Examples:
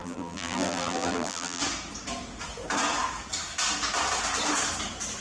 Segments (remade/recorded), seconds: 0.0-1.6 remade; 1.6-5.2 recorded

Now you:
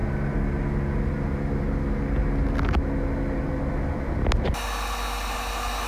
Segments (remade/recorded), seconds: 0.0-5.9 recorded

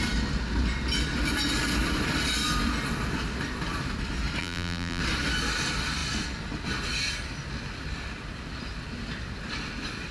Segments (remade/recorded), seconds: 0.0-4.4 recorded; 4.4-5.0 remade; 5.0-10.1 recorded